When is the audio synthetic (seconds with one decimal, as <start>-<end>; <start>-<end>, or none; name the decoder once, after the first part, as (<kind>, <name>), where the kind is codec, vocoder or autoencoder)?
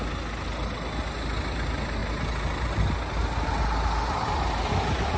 none